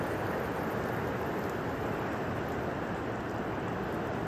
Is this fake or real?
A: real